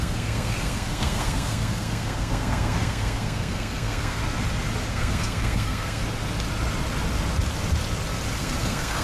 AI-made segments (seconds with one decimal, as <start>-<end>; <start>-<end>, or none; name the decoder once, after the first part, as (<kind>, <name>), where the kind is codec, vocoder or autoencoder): 0.0-4.2 (codec, SNAC); 4.9-6.0; 8.4-9.0